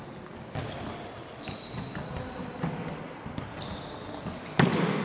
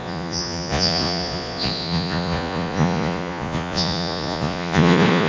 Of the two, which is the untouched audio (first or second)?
first